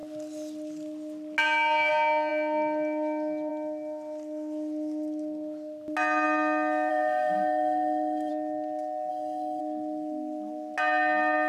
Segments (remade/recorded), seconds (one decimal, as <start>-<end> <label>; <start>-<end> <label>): 0.0-6.9 recorded; 6.9-8.3 remade; 8.3-9.1 recorded; 9.1-9.6 remade; 9.6-11.5 recorded